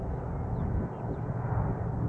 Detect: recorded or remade recorded